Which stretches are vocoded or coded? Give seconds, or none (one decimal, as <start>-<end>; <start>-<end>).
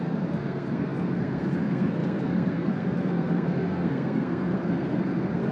0.0-5.5